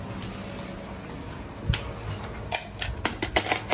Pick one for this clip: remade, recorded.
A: recorded